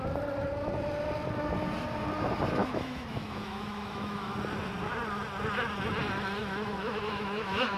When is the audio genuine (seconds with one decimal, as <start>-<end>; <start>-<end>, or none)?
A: 0.0-2.6; 4.3-6.4